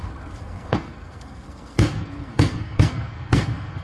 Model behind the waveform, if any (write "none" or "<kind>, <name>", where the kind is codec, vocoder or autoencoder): codec, SNAC